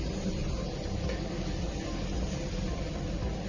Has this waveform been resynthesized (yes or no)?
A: no